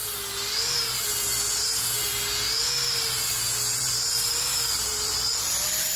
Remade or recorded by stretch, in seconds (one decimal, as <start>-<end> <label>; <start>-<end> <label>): 0.0-3.6 recorded; 3.6-6.0 remade